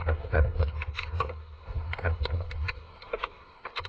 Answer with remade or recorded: remade